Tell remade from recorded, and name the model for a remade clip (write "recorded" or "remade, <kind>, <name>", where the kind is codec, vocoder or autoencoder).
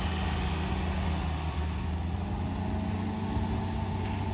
recorded